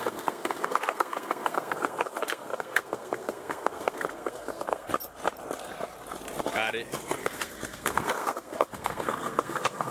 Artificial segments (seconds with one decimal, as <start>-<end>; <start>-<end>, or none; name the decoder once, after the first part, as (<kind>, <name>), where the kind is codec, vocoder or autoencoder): 0.0-4.9 (codec, SNAC); 7.2-9.9